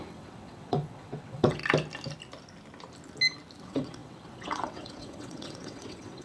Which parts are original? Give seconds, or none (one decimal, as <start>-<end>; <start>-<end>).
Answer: 1.6-3.6